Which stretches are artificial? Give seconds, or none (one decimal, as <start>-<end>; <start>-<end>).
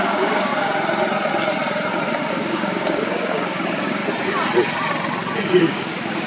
0.0-0.5; 2.3-4.0; 5.6-6.3